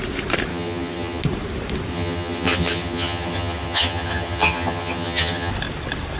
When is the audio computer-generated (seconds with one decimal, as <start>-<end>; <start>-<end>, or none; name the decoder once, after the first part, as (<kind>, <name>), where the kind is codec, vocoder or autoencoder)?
0.5-1.2 (vocoder, HiFi-GAN); 1.9-5.5